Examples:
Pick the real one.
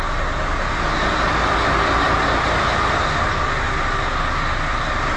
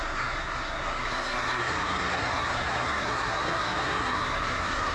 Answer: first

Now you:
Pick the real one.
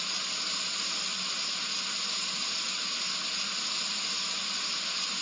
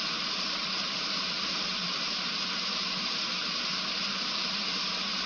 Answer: first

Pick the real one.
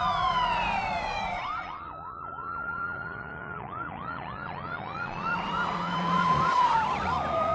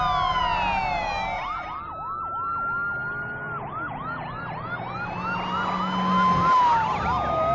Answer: second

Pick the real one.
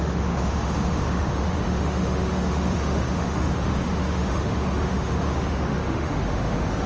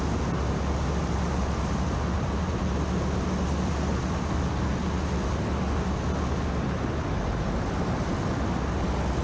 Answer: second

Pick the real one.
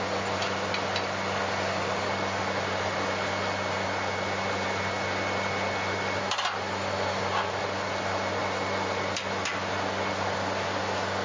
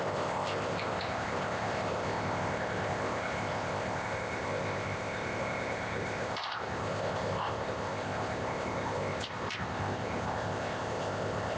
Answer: first